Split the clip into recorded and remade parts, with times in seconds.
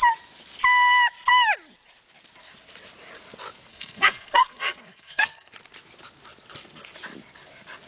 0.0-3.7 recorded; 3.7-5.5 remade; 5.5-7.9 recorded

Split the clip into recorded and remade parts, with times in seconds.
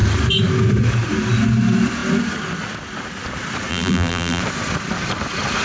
0.0-3.7 recorded; 3.7-4.4 remade; 4.4-5.6 recorded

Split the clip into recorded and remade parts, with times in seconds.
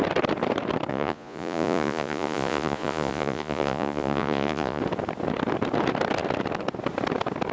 0.0-0.9 recorded; 0.9-4.8 remade; 4.8-7.5 recorded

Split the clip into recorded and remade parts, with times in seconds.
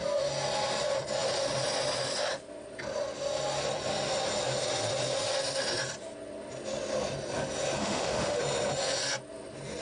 0.0-7.8 recorded; 7.8-8.4 remade; 8.4-9.8 recorded